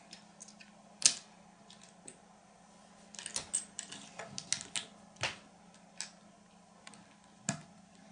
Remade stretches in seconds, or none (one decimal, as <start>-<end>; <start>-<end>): none